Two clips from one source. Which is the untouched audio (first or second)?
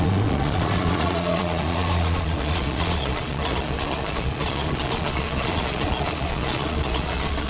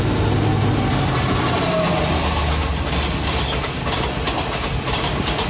second